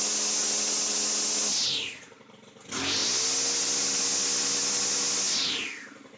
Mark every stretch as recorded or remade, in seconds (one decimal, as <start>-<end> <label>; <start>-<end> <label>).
0.0-6.2 recorded